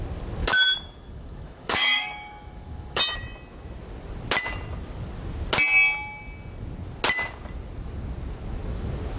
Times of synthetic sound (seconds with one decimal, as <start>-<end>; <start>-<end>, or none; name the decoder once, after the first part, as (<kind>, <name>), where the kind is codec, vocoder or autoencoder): 0.4-3.0 (autoencoder, DAC-VAE)